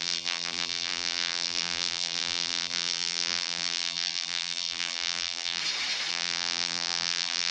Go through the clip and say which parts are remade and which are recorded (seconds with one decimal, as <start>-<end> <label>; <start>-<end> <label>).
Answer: 0.0-5.6 remade; 5.6-6.1 recorded; 6.1-7.5 remade